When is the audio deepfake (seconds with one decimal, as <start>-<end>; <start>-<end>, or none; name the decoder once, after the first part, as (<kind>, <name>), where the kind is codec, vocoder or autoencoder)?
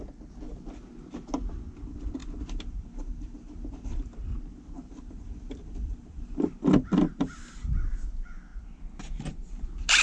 2.2-7.2 (vocoder, BigVGAN v2)